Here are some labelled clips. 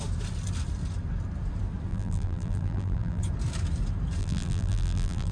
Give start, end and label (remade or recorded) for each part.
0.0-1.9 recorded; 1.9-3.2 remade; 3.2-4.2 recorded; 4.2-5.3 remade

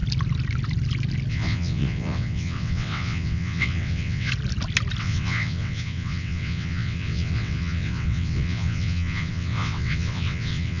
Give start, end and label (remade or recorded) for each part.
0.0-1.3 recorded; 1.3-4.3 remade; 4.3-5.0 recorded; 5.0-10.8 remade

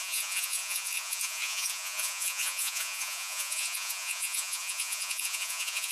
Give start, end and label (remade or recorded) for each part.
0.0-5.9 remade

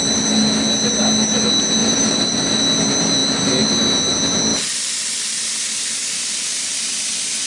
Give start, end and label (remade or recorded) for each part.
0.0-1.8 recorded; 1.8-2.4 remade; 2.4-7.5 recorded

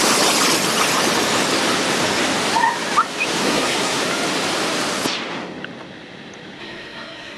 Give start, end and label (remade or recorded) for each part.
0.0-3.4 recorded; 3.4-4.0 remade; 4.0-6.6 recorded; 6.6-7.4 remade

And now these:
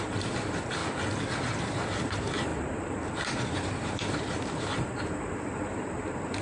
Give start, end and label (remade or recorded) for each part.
0.0-0.8 remade; 0.8-1.4 recorded; 1.4-6.4 remade

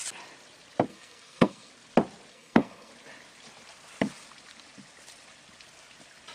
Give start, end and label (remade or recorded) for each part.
0.0-0.9 recorded; 0.9-1.7 remade; 1.7-2.3 recorded; 2.3-2.9 remade; 2.9-6.3 recorded

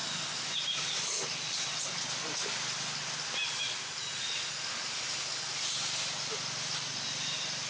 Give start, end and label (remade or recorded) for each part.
0.0-7.7 recorded